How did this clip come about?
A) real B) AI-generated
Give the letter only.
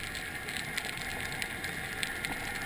A